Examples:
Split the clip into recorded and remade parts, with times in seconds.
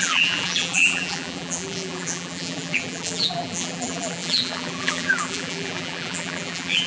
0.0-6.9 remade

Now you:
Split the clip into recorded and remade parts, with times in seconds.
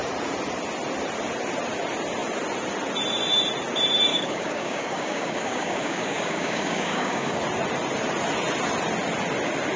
0.0-4.1 recorded; 4.1-7.4 remade; 7.4-9.8 recorded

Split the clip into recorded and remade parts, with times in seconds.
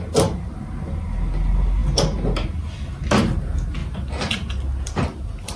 0.0-5.6 recorded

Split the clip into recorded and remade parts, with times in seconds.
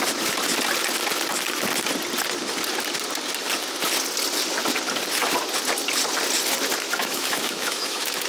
0.0-7.0 recorded; 7.0-8.3 remade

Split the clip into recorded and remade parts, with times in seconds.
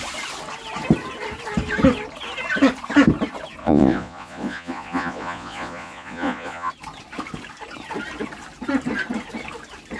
0.0-3.6 recorded; 3.6-6.7 remade; 6.7-10.0 recorded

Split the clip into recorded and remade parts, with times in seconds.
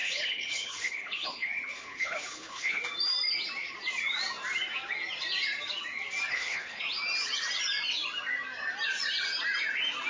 0.0-2.8 remade; 2.8-6.3 recorded; 6.3-6.8 remade; 6.8-10.1 recorded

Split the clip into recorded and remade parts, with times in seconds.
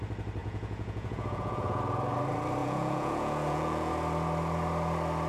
0.0-0.4 recorded; 0.4-1.8 remade; 1.8-2.6 recorded; 2.6-3.9 remade; 3.9-5.3 recorded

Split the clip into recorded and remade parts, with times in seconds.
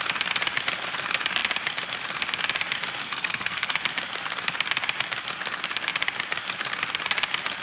0.0-3.0 recorded; 3.0-3.8 remade; 3.8-7.6 recorded